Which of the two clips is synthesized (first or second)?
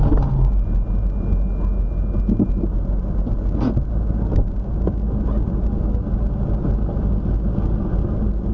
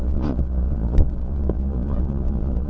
second